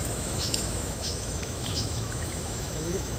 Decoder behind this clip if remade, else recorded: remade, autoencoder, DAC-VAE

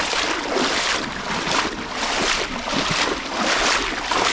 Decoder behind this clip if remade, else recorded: recorded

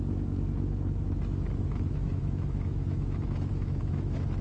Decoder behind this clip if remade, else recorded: remade, autoencoder, DAC-VAE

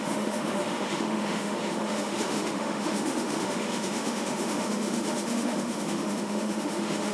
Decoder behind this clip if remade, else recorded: remade, autoencoder, DAC-VAE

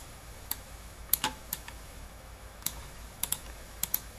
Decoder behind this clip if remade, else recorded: remade, autoencoder, DAC-VAE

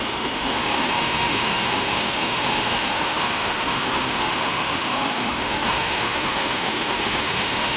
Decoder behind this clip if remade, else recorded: remade, autoencoder, DAC-VAE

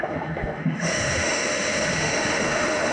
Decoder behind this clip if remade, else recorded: remade, autoencoder, DAC-VAE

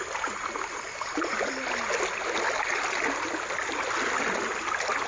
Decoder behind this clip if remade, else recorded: recorded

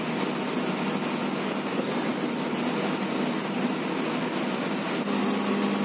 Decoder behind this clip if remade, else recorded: recorded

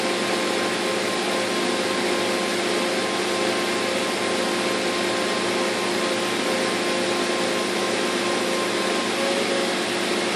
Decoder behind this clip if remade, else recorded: recorded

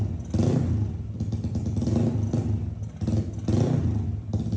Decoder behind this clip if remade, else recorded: recorded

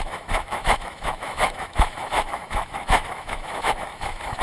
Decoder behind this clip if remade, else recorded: remade, autoencoder, DAC-VAE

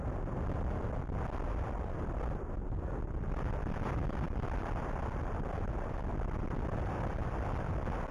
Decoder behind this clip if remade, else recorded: recorded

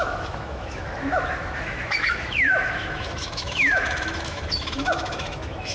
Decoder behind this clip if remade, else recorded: remade, autoencoder, DAC-VAE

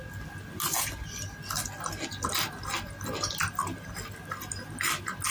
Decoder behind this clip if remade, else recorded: recorded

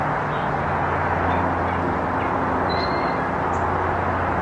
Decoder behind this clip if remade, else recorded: recorded